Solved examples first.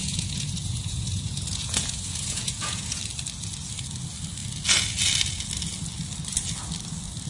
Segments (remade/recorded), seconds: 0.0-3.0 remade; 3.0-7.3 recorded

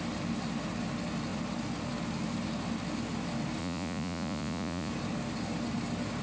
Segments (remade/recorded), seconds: 0.0-3.6 recorded; 3.6-4.9 remade; 4.9-6.2 recorded

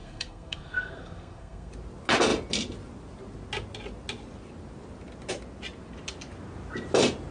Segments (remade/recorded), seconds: 0.0-1.7 remade; 1.7-7.3 recorded